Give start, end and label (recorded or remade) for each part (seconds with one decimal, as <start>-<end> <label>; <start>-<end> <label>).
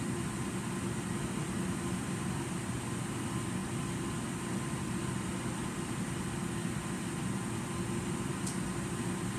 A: 0.0-9.4 recorded